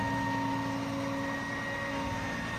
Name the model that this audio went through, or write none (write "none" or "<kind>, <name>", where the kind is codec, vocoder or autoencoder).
none